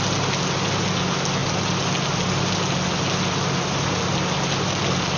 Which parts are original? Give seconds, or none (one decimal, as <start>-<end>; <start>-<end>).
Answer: 0.0-5.2